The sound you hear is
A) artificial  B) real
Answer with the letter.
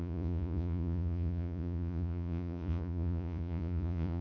A